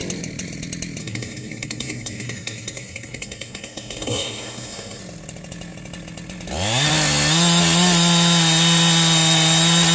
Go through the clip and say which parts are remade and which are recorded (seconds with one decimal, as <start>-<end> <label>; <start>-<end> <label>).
0.0-1.0 recorded; 1.0-5.0 remade; 5.0-9.9 recorded